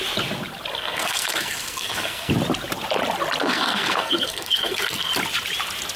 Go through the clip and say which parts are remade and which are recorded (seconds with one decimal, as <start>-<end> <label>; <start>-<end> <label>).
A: 0.0-0.7 recorded; 0.7-2.3 remade; 2.3-3.4 recorded; 3.4-5.1 remade; 5.1-6.0 recorded